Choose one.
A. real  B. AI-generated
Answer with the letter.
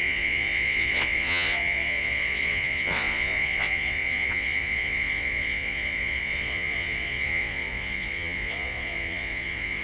B